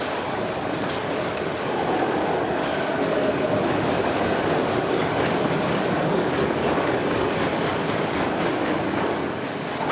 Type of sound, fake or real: fake